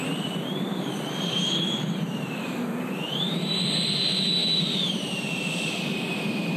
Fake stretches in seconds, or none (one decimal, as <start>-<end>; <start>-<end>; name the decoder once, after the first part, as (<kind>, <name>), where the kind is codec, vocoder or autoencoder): 0.0-3.5 (vocoder, BigVGAN v2); 4.4-5.4